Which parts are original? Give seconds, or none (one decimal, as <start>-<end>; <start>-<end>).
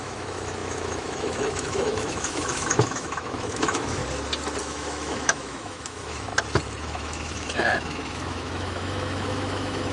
4.0-4.6; 6.3-6.8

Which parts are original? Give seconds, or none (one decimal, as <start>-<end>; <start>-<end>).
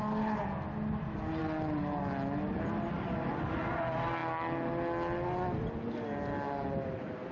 0.0-7.3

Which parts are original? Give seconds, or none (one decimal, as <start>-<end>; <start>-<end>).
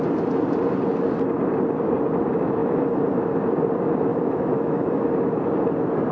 0.0-2.6; 3.2-4.1; 5.1-6.1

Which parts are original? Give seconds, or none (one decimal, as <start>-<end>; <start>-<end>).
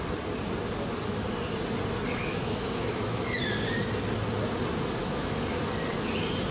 0.0-2.2; 3.5-5.0; 5.6-6.5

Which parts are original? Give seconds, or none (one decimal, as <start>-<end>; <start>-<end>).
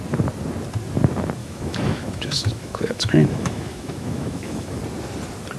0.0-1.4; 4.8-5.6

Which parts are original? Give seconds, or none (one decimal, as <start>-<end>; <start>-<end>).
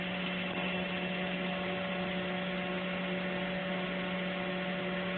0.0-5.2